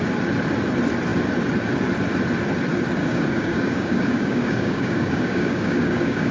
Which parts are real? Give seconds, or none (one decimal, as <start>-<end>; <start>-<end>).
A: 0.0-3.0